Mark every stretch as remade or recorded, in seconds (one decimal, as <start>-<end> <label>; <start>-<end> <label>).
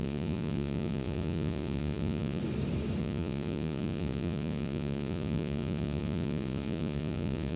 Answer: 0.0-2.4 remade; 2.4-3.0 recorded; 3.0-7.6 remade